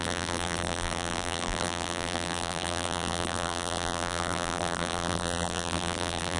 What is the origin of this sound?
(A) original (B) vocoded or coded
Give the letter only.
B